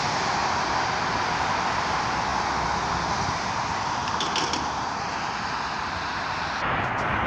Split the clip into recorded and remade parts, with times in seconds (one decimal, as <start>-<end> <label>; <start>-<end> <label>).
0.0-7.3 recorded